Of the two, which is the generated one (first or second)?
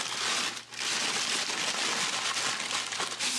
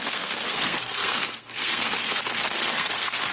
second